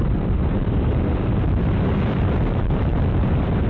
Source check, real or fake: fake